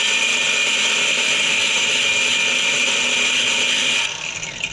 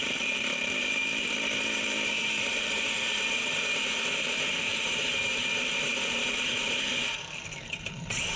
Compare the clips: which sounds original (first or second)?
first